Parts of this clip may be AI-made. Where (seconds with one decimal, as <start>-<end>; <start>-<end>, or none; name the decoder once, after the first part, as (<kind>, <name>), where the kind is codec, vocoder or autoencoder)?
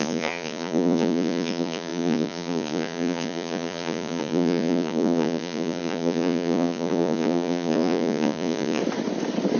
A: 0.0-8.8 (vocoder, Vocos)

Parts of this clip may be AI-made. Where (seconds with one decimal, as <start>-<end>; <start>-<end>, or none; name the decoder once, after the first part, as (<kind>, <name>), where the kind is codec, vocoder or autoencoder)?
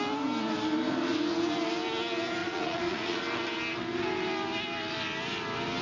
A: 2.4-3.2 (vocoder, Vocos)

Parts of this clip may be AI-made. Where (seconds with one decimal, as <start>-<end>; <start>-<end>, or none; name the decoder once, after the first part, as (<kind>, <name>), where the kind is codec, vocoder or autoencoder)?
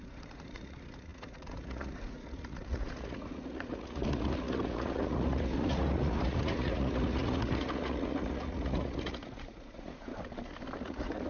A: 0.0-10.1 (vocoder, Vocos); 10.8-11.3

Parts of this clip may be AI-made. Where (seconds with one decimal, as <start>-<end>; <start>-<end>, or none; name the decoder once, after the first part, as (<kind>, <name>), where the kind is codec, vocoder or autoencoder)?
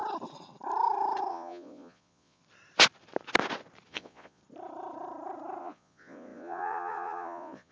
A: 1.3-2.4 (vocoder, Vocos); 3.9-4.4; 5.6-7.7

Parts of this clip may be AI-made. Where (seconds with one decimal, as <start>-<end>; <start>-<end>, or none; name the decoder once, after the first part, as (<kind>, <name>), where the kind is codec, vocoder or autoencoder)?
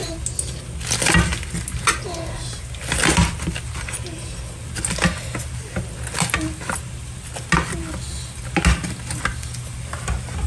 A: none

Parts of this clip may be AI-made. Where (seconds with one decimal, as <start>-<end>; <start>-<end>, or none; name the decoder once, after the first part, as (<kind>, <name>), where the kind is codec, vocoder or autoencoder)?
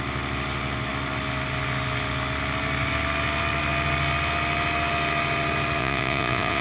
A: 5.8-6.6 (vocoder, Vocos)